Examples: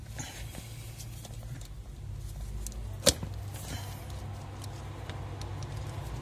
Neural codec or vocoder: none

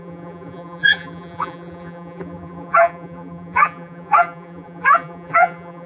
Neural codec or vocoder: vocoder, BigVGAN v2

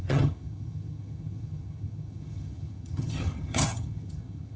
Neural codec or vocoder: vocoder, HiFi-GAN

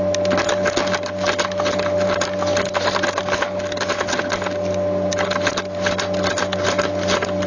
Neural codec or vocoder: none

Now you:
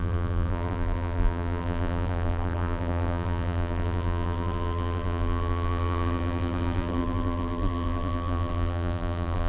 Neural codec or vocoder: vocoder, BigVGAN v2